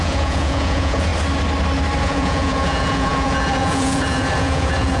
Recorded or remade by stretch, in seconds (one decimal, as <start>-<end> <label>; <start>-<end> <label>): 0.0-1.1 remade; 1.1-2.0 recorded; 2.0-5.0 remade